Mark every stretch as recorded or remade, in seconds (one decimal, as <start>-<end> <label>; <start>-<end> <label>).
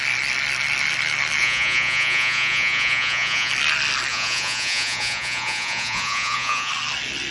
0.0-1.4 recorded; 1.4-3.5 remade; 3.5-4.1 recorded; 4.1-6.7 remade; 6.7-7.3 recorded